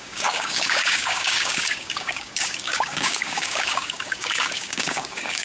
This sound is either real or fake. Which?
fake